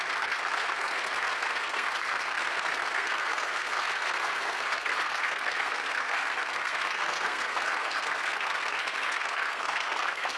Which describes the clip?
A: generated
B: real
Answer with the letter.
A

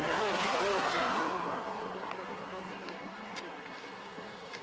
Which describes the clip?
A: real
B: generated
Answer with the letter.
B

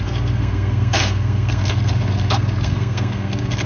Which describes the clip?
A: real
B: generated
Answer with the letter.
B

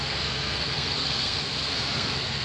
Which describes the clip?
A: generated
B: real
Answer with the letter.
A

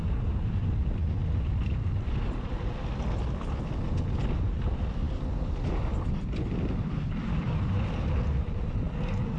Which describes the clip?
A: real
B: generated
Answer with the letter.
A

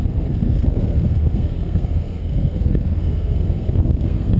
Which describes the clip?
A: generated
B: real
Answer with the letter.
A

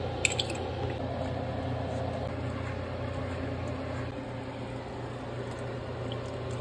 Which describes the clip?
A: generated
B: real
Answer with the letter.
B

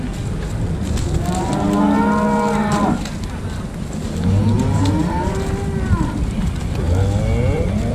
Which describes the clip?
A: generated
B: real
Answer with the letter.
B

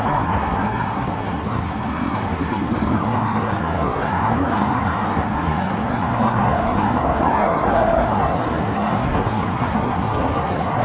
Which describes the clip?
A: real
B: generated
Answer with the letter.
B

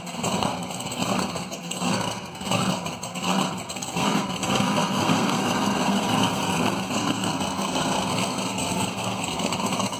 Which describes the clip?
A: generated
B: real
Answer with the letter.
A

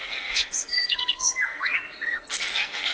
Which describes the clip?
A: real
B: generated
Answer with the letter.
B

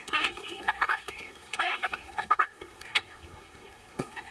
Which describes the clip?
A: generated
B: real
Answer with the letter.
A